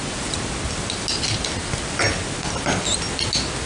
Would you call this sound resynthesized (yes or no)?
no